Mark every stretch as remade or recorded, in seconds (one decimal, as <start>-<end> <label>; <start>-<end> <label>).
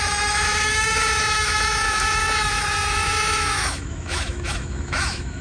0.0-5.4 remade